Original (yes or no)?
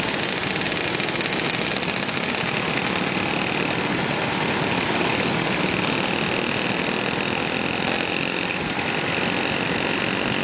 yes